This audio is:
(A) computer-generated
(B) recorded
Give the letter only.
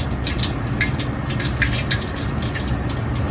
B